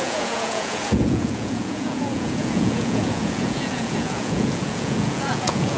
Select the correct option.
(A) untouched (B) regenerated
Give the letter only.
B